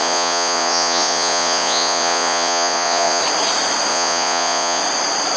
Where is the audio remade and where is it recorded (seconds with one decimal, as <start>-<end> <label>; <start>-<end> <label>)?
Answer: 0.0-3.2 remade; 3.2-3.9 recorded; 3.9-4.8 remade; 4.8-5.4 recorded